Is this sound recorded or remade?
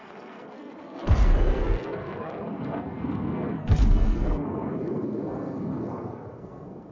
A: remade